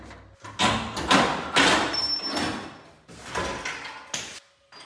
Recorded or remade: recorded